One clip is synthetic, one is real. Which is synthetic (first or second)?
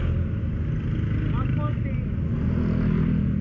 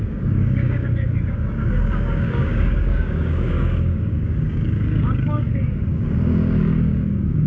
second